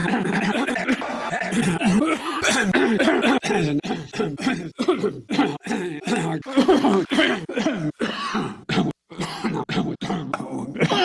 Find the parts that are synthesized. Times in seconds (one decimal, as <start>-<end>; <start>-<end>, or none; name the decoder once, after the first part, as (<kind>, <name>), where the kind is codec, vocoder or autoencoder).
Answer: 0.0-0.7 (autoencoder, DAC-VAE)